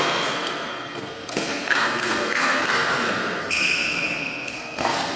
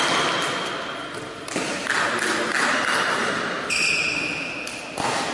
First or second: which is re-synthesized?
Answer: first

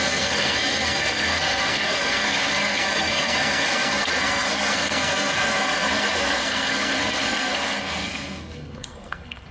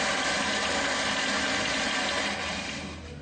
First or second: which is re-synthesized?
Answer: first